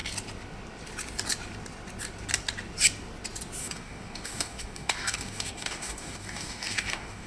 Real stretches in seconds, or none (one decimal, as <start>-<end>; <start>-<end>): 0.0-3.6